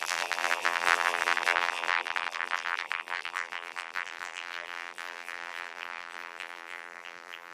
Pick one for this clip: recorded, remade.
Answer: remade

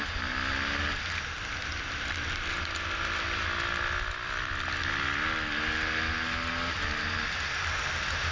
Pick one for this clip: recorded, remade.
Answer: recorded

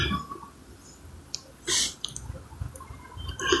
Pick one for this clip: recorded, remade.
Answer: recorded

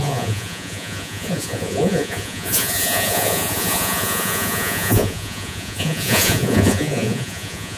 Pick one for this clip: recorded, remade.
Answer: remade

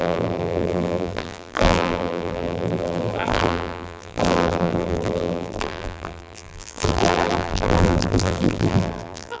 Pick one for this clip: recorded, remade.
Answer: remade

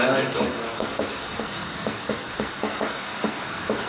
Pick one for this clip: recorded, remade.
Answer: remade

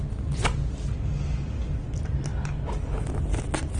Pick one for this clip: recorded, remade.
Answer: recorded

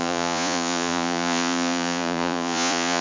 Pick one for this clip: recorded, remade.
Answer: remade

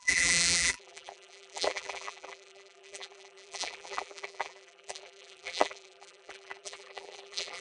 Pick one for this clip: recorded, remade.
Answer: remade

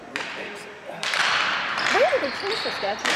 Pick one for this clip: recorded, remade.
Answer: remade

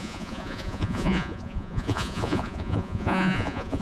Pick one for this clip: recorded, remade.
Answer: remade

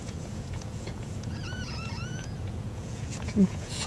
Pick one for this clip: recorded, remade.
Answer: remade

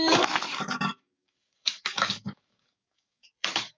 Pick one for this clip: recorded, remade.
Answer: remade